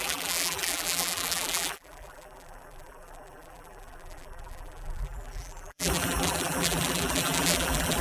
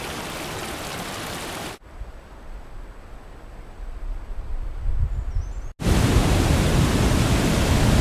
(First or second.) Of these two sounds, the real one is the second